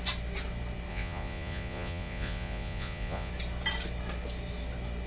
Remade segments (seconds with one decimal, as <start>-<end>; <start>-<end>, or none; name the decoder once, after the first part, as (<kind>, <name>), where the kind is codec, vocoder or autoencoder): 0.9-3.3 (vocoder, Vocos)